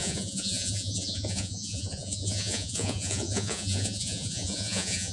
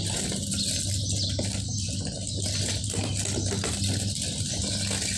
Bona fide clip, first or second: second